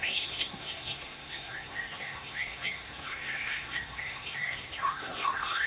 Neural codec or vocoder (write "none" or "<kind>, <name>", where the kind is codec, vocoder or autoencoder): codec, SNAC